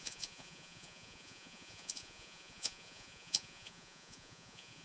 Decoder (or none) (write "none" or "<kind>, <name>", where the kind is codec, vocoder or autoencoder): vocoder, Vocos